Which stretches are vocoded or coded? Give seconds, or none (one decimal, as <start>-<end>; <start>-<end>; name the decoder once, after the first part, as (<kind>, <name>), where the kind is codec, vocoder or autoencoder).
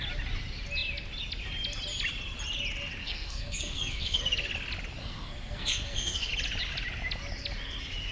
3.0-4.2 (codec, SNAC); 5.0-6.3